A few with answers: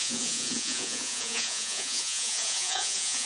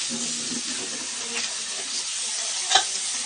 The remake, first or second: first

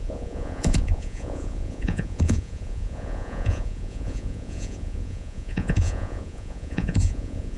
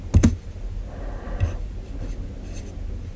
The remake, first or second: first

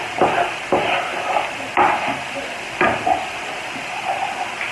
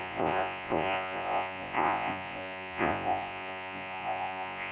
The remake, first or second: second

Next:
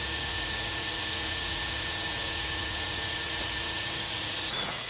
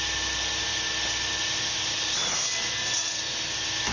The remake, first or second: first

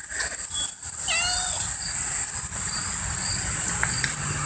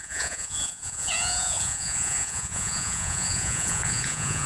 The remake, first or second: second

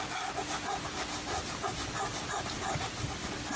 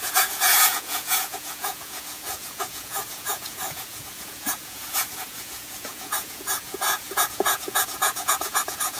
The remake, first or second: second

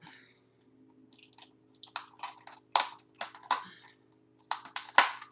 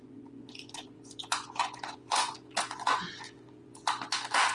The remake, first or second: second